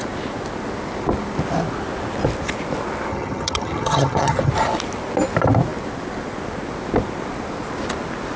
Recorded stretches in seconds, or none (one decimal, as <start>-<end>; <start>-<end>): 0.0-3.1; 4.5-8.4